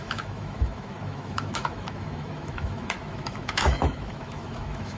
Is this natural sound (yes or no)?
no